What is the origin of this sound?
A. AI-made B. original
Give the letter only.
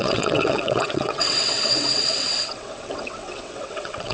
A